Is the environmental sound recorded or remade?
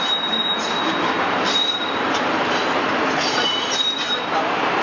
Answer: remade